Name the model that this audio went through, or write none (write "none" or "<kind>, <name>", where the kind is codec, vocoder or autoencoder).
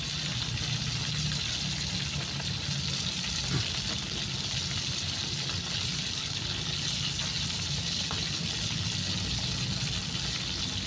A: none